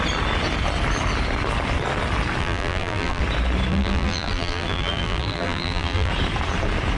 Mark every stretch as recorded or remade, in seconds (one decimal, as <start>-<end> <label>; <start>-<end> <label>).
0.0-2.4 recorded; 2.4-3.2 remade; 3.2-3.7 recorded; 3.7-6.1 remade; 6.1-7.0 recorded